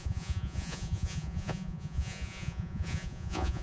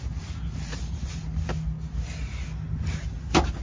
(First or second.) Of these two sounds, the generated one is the first